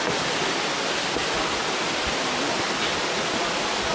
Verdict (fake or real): real